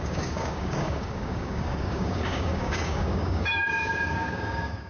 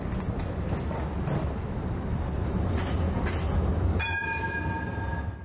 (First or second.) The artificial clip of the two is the first